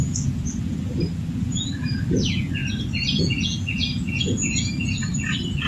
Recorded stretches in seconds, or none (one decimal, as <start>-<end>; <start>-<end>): 2.6-3.2